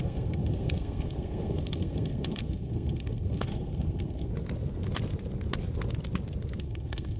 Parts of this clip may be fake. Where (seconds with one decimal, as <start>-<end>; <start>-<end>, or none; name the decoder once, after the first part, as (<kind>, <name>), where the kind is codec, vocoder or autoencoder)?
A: 0.0-4.3 (codec, SNAC); 6.6-7.2

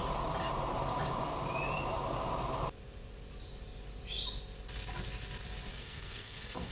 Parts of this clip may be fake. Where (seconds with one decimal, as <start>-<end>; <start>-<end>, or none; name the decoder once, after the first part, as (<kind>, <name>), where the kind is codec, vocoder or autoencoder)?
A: 5.7-6.7 (codec, SNAC)

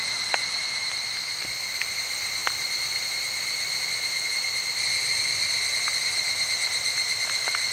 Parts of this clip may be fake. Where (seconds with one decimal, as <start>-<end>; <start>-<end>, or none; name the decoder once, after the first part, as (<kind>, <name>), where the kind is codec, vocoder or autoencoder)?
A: 2.4-5.7 (vocoder, BigVGAN v2)

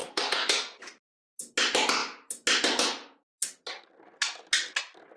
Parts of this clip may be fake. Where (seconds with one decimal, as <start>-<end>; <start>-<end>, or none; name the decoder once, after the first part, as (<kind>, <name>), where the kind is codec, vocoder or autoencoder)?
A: 0.0-0.8 (codec, SNAC)

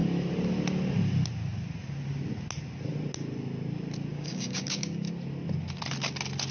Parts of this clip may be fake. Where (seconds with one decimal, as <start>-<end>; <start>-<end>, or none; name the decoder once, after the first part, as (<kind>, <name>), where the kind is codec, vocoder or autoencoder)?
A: 4.1-5.1 (codec, DAC)

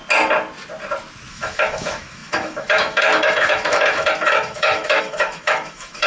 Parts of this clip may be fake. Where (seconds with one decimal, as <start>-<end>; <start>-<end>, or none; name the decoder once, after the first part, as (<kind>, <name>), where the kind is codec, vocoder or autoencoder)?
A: 1.3-6.1 (autoencoder, DAC-VAE)

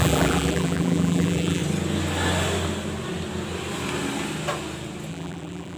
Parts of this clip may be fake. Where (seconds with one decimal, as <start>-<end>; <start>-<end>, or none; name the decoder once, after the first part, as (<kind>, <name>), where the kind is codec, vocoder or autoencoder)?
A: 0.0-1.6 (vocoder, BigVGAN v2); 5.1-5.8

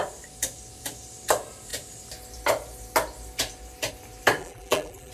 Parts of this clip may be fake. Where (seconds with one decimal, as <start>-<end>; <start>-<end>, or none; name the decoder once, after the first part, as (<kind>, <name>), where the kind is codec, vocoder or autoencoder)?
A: 4.4-5.1 (vocoder, BigVGAN v2)